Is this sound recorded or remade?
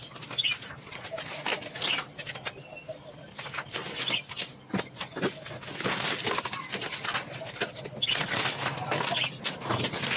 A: recorded